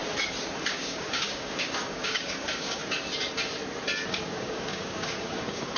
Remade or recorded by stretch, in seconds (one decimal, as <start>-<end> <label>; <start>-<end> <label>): 0.0-0.6 recorded; 0.6-2.8 remade; 2.8-4.1 recorded; 4.1-5.8 remade